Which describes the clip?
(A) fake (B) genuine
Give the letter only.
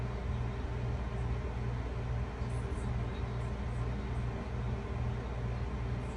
B